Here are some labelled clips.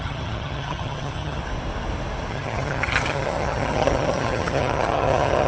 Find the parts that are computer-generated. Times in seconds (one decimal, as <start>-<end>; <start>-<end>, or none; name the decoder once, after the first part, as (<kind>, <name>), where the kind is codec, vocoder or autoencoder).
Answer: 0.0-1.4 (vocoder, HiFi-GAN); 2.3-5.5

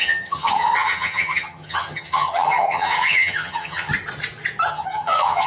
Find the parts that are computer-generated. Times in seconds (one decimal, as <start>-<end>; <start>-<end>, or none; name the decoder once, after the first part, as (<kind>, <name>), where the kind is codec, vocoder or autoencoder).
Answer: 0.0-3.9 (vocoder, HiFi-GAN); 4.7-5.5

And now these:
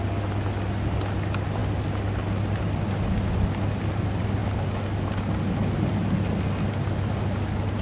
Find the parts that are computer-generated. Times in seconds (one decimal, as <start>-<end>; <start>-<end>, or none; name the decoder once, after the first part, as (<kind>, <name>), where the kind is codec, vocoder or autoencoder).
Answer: none